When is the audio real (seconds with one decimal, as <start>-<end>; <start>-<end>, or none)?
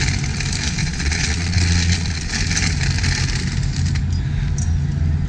0.0-0.8; 2.3-5.3